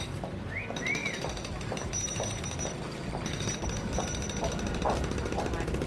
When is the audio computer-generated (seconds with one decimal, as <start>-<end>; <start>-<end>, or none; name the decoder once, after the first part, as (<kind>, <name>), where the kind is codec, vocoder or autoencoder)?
1.0-2.4 (vocoder, BigVGAN v2)